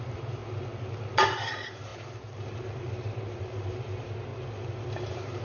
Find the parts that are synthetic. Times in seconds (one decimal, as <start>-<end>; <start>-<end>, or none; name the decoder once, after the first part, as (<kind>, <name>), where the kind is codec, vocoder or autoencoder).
0.0-0.4 (vocoder, BigVGAN v2); 1.0-4.3; 4.9-5.4